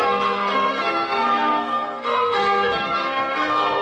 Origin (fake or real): fake